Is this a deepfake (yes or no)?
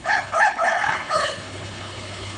yes